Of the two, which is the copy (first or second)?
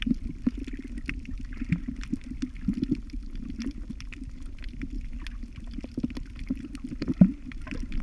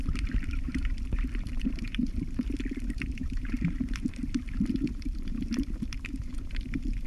second